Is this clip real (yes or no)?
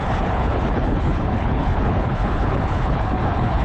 no